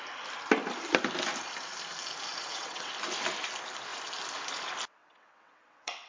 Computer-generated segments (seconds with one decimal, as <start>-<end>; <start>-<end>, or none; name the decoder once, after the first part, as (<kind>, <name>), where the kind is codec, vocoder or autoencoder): 2.4-2.9 (vocoder, WaveNeXt); 5.0-6.1